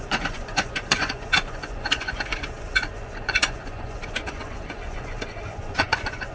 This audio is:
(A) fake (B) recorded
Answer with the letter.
A